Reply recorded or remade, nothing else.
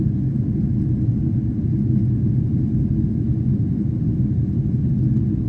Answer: recorded